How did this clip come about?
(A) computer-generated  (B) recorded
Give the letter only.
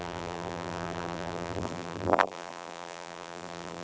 A